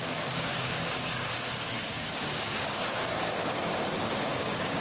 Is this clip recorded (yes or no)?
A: no